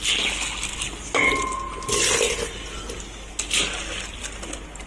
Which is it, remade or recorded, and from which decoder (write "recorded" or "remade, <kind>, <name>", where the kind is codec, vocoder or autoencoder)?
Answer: recorded